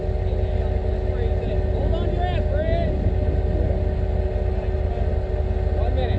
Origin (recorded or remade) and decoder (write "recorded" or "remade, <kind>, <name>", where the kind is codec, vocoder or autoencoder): recorded